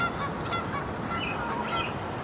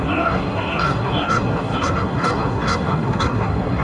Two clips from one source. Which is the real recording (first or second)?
first